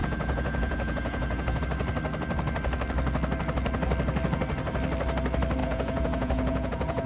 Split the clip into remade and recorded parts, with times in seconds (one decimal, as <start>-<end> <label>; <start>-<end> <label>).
0.0-1.6 remade; 1.6-5.6 recorded; 5.6-7.1 remade